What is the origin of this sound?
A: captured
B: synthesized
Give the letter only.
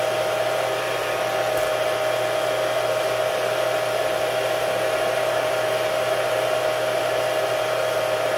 A